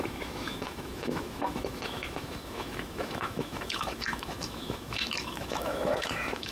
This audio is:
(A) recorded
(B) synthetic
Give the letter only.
B